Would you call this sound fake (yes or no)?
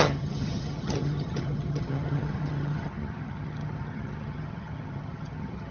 yes